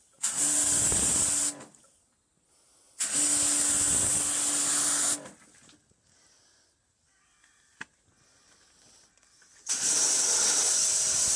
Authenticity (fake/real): real